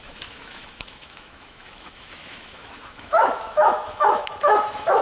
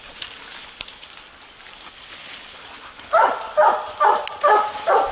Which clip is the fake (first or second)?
first